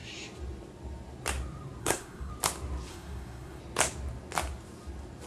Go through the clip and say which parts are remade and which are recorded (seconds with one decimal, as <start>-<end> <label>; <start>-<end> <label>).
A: 0.0-1.8 recorded; 1.8-2.3 remade; 2.3-2.9 recorded; 2.9-3.6 remade; 3.6-5.3 recorded